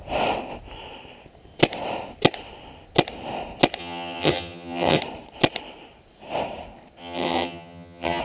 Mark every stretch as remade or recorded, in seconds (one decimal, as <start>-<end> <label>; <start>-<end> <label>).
0.0-3.8 recorded; 3.8-5.0 remade; 5.0-7.0 recorded; 7.0-8.2 remade